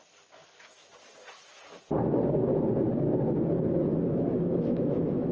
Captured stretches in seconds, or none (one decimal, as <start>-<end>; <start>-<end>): 0.0-3.9